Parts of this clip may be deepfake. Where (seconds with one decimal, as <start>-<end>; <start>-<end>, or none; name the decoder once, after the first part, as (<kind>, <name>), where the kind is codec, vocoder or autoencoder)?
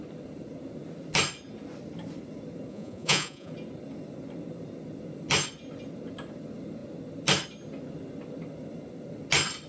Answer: 2.7-3.5 (vocoder, Vocos)